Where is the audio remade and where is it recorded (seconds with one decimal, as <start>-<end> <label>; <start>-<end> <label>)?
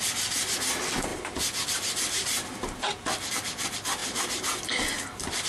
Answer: 0.0-1.1 recorded; 1.1-3.3 remade; 3.3-5.5 recorded